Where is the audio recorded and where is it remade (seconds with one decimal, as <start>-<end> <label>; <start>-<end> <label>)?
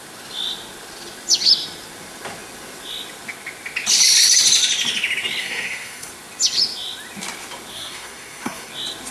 0.0-5.4 recorded; 5.4-6.1 remade; 6.1-7.7 recorded; 7.7-8.7 remade; 8.7-9.1 recorded